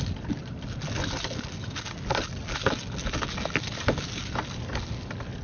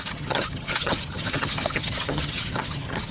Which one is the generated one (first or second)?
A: second